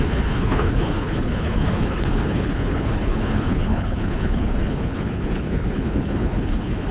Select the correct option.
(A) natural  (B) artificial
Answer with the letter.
B